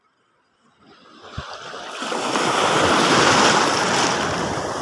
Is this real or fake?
fake